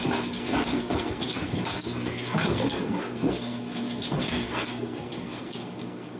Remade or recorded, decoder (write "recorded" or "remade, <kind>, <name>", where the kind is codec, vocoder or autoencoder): remade, codec, SNAC